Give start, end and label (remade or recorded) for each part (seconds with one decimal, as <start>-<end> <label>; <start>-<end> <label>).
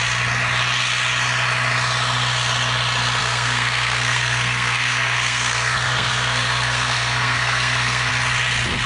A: 0.0-3.2 recorded; 3.2-8.1 remade; 8.1-8.9 recorded